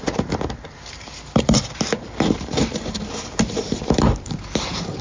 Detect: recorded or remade remade